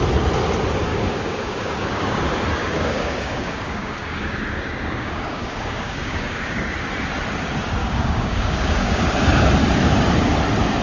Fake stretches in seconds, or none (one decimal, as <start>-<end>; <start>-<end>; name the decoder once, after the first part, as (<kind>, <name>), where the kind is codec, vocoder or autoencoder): 0.9-2.2 (codec, DAC); 2.6-6.7; 7.8-9.1